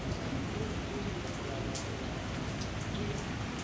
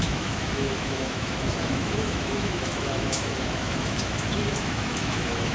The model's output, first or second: second